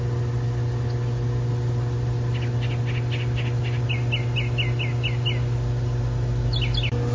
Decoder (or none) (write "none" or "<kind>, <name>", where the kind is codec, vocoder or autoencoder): none